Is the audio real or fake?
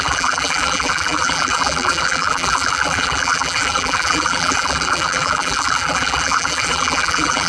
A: fake